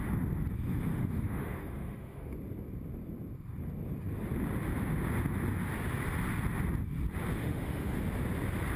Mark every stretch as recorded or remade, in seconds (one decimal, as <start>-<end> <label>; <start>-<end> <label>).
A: 0.0-0.9 recorded; 0.9-2.3 remade; 2.3-7.4 recorded; 7.4-8.0 remade; 8.0-8.8 recorded